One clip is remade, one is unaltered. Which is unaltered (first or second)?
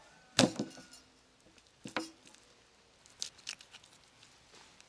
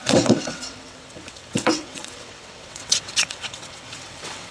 first